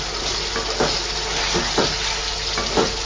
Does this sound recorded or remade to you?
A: recorded